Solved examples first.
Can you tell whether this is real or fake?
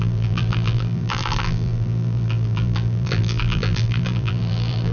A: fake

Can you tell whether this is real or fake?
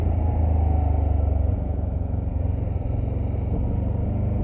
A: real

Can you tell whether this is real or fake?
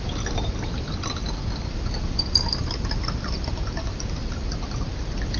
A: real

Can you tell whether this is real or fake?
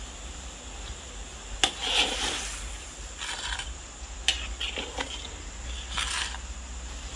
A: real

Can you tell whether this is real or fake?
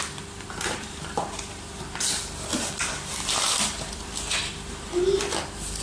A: fake